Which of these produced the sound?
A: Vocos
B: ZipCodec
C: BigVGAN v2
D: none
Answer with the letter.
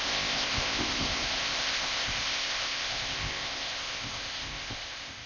B